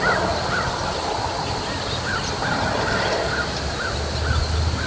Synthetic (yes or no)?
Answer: no